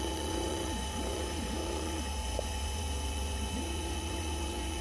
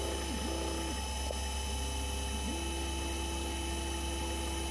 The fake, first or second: first